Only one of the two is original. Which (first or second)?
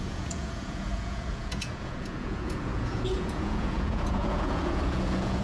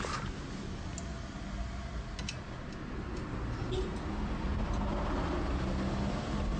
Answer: second